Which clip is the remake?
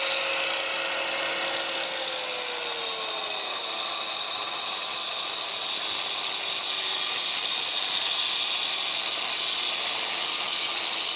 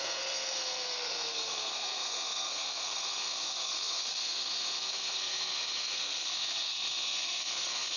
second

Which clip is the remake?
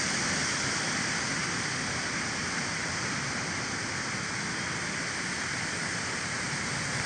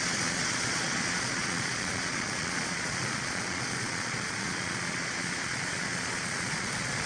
second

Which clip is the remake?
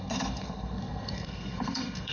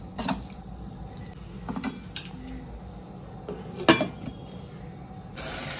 first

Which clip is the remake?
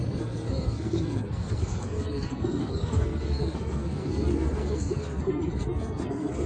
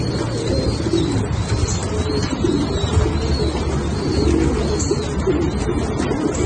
first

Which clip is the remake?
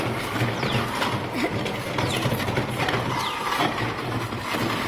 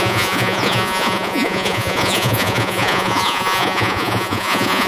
second